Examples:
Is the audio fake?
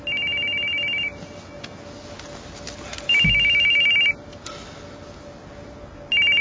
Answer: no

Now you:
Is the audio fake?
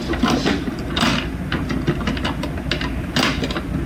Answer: no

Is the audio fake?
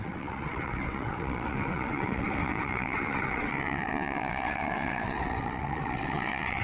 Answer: yes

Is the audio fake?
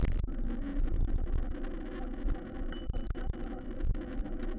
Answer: no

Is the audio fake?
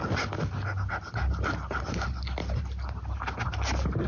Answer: no